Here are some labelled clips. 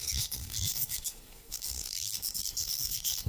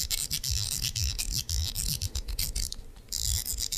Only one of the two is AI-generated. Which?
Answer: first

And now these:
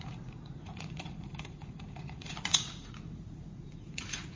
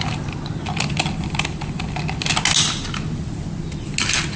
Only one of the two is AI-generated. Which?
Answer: first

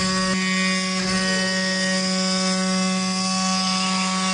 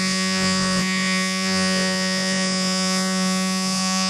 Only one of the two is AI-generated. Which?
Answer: second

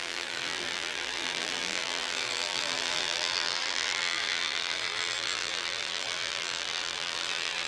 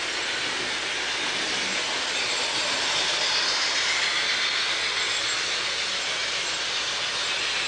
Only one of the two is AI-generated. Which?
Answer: first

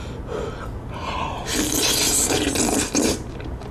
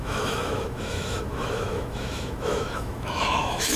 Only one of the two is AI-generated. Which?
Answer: second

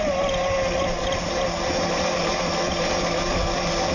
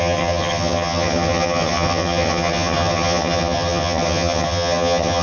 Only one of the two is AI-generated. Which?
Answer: second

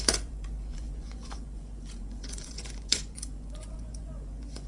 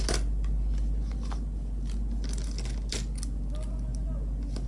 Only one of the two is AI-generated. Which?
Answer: first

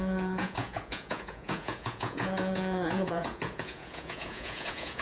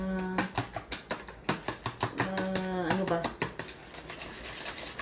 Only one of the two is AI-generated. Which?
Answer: first